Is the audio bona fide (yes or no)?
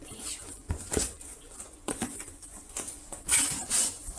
no